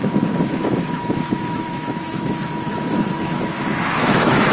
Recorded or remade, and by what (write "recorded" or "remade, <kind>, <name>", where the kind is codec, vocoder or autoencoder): remade, autoencoder, DAC-VAE